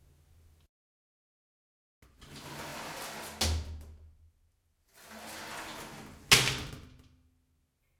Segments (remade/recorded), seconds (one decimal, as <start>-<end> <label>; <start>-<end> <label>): 0.0-8.0 recorded